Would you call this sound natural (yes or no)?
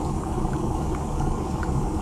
no